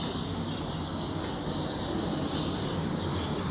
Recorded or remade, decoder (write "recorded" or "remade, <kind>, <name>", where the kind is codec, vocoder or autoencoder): recorded